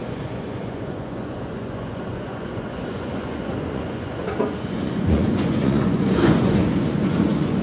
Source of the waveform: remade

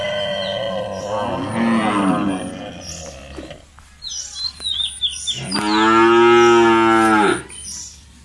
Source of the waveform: recorded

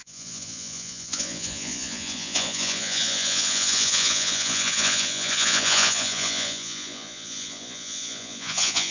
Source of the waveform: remade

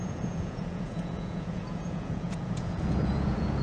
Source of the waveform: remade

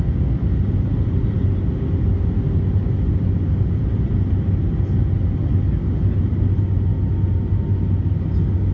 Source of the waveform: recorded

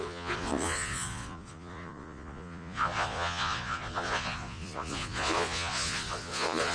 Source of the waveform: remade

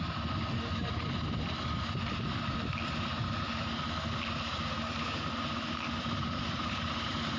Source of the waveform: recorded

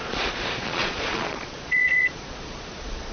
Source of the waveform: remade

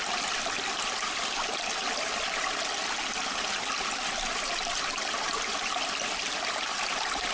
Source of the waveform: recorded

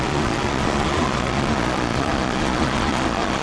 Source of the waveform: remade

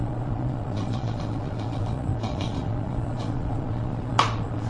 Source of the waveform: remade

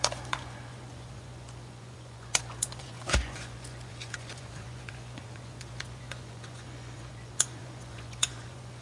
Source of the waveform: remade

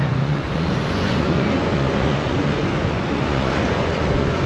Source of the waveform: remade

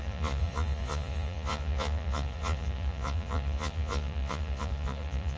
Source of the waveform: remade